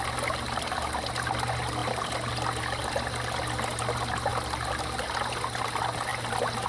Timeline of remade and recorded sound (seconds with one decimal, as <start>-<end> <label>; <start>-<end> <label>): 0.0-6.7 recorded